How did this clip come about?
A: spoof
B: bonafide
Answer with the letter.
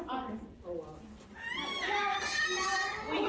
B